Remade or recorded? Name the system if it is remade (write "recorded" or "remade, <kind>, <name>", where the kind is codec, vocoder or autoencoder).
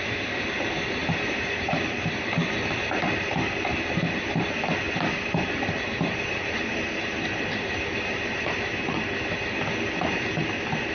remade, vocoder, BigVGAN v2